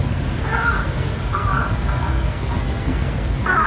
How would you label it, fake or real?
fake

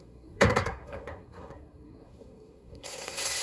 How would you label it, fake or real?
fake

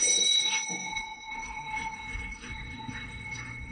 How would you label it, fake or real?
fake